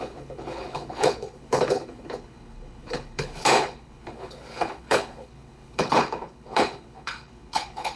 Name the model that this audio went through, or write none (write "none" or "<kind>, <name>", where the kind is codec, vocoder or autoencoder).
codec, HILCodec